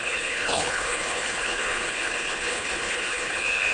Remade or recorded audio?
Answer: remade